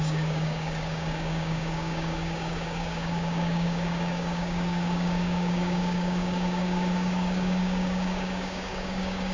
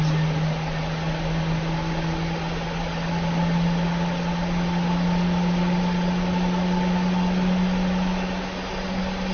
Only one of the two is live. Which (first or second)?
second